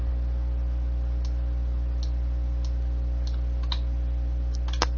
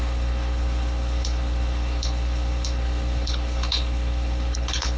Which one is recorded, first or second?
first